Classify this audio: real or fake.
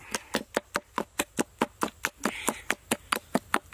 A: real